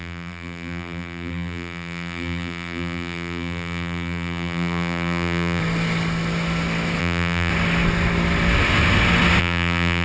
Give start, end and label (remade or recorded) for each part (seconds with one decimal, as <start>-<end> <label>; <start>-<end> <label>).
0.0-5.6 remade; 5.6-7.0 recorded; 7.0-7.5 remade; 7.5-9.4 recorded; 9.4-10.0 remade